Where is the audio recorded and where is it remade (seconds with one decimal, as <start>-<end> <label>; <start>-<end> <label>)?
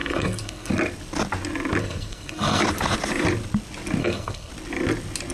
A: 0.0-0.7 remade; 0.7-1.8 recorded; 1.8-2.6 remade; 2.6-4.0 recorded; 4.0-4.5 remade; 4.5-5.3 recorded